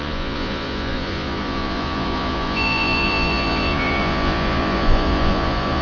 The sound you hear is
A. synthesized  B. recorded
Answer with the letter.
A